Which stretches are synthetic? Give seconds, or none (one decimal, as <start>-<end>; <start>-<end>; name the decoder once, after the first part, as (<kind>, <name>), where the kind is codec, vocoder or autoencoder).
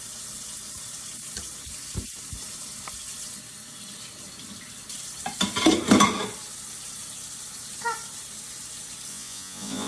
9.1-9.9 (vocoder, Vocos)